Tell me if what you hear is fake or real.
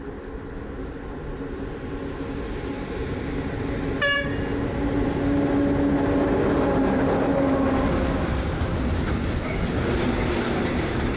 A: real